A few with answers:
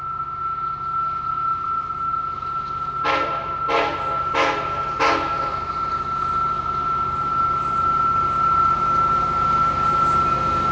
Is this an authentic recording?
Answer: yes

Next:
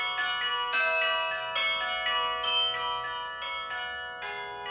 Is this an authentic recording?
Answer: yes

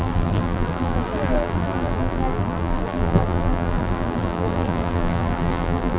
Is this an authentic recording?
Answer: no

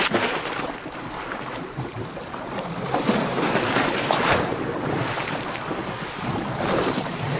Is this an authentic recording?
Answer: no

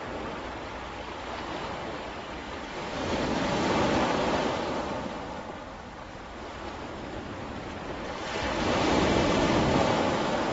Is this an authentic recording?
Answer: yes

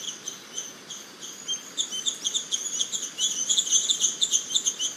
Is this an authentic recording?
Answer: yes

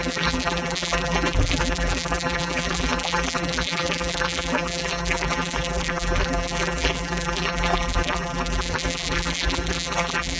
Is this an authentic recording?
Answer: no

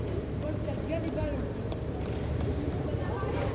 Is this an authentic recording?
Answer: no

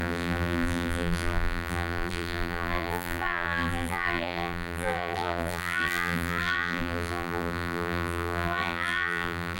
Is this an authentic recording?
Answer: no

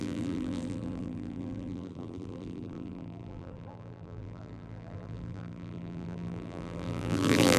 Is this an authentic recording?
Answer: no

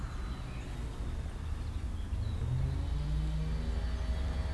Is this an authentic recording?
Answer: yes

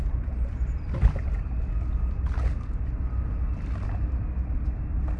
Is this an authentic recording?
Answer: yes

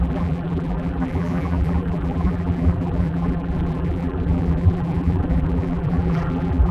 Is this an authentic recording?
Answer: no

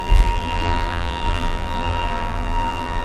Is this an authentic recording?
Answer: no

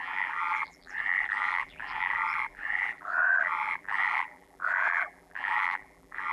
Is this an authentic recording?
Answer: no